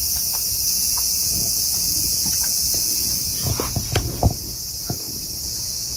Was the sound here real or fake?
fake